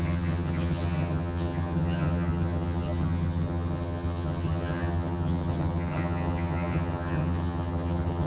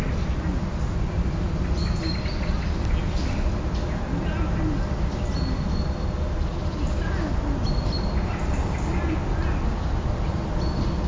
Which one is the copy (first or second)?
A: first